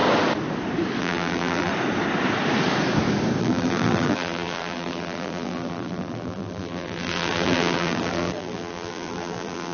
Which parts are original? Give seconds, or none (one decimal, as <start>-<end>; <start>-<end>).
0.0-1.0; 1.7-3.4